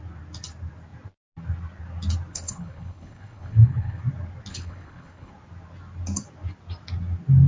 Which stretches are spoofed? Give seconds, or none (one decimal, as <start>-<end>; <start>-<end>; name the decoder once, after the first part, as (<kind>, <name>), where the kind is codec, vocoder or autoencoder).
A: 2.3-4.0 (codec, HILCodec); 4.5-5.3